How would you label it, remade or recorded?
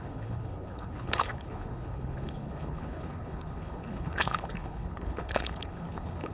remade